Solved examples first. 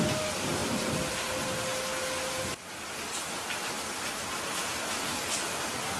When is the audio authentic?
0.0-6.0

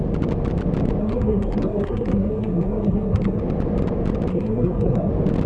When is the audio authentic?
0.0-1.0; 3.4-4.3; 5.1-5.5

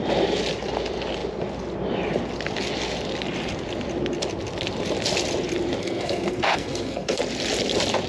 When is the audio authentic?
0.0-5.8; 7.2-8.1

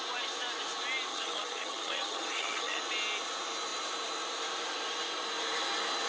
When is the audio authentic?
0.0-1.1; 2.8-6.1

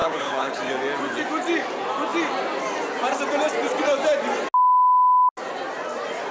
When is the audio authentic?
0.6-6.3

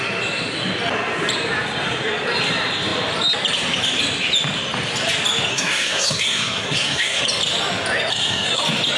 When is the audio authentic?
0.0-5.5; 7.2-8.1; 8.6-9.0

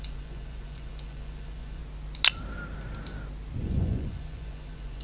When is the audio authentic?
1.8-3.6

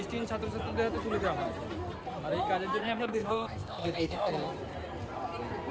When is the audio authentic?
0.0-2.8; 4.3-5.7